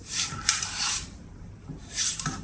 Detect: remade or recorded remade